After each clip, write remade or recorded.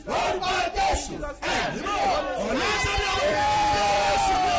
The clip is remade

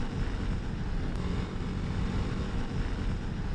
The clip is recorded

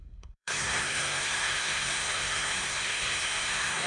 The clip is remade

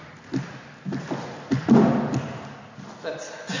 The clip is recorded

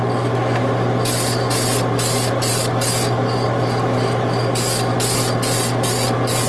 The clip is recorded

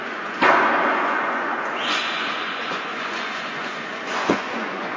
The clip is remade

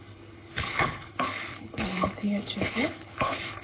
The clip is remade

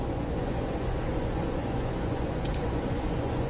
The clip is remade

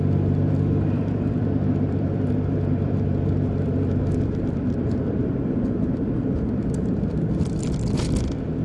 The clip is remade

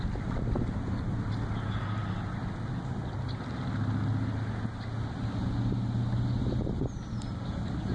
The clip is recorded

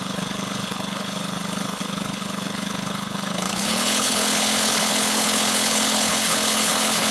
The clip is remade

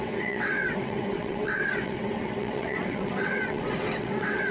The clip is remade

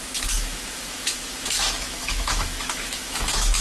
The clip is remade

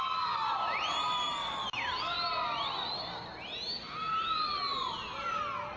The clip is recorded